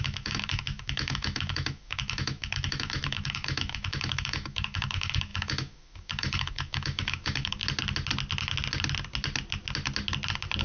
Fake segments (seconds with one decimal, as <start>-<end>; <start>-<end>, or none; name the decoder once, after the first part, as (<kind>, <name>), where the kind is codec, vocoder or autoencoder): 0.0-7.6 (autoencoder, DAC-VAE)